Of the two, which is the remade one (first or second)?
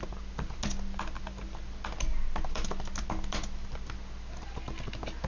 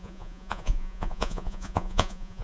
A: second